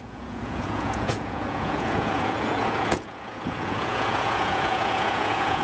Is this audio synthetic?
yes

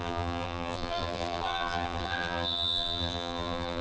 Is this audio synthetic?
yes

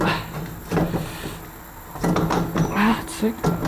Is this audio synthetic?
no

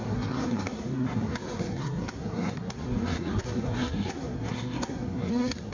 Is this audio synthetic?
yes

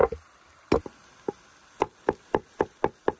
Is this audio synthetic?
no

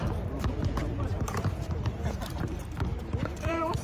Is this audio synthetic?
yes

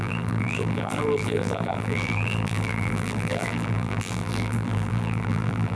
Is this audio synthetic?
yes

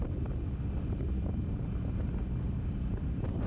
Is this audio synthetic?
no